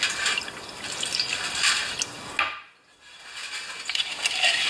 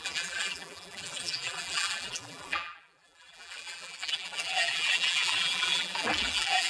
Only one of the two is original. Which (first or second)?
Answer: first